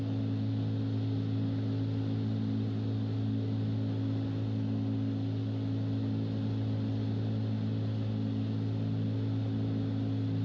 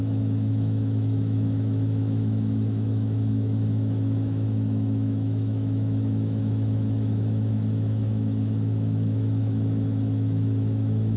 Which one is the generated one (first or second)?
second